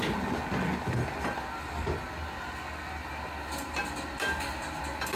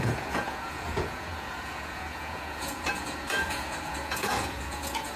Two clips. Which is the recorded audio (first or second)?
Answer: first